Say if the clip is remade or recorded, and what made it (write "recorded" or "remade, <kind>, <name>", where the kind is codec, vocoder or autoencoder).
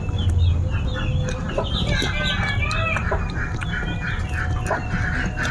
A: recorded